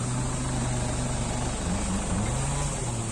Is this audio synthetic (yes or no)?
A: no